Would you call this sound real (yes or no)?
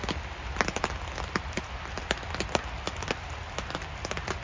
yes